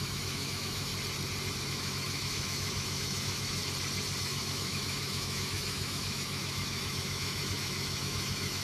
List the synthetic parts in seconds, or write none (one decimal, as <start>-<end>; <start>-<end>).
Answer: 0.0-0.9; 1.6-3.6; 4.2-8.6